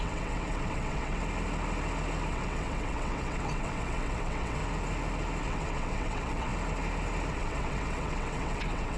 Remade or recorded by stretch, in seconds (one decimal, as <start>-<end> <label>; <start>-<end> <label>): 0.0-1.2 remade; 1.2-2.3 recorded; 2.3-4.6 remade; 4.6-5.4 recorded; 5.4-6.5 remade; 6.5-7.3 recorded; 7.3-9.0 remade